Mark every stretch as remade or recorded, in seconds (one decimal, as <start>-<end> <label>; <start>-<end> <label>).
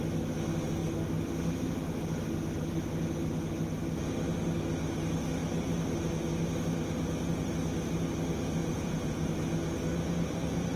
0.0-8.6 recorded; 8.6-9.3 remade; 9.3-10.8 recorded